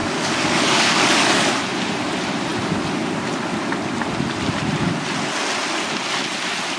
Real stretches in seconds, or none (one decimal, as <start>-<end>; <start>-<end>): 1.5-6.8